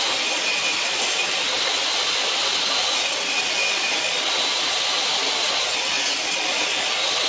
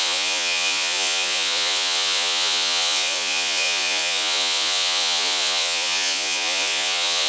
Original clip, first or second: first